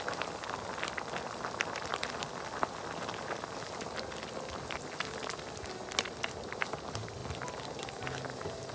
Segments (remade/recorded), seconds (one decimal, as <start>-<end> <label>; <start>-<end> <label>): 0.0-8.7 recorded